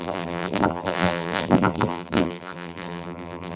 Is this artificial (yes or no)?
yes